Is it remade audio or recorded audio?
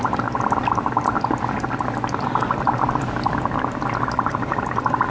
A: recorded